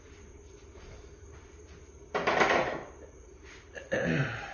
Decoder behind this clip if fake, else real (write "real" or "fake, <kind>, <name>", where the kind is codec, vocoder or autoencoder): real